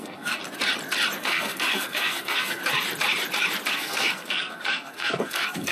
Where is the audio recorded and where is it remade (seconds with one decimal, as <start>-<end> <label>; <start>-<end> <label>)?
0.0-0.4 remade; 0.4-1.2 recorded; 1.2-2.6 remade; 2.6-3.7 recorded; 3.7-5.7 remade